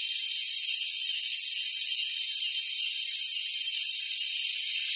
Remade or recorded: recorded